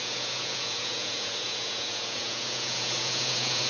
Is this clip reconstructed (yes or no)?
yes